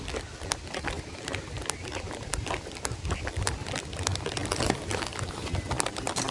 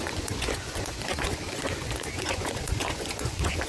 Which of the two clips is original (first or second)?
first